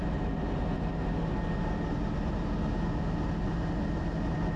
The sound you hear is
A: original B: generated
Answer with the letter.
A